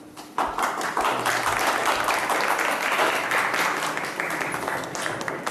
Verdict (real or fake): real